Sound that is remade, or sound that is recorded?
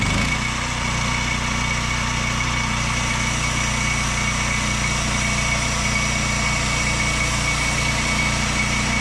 recorded